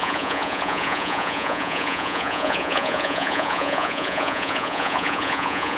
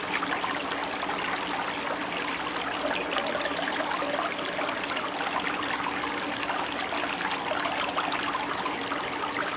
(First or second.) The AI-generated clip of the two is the first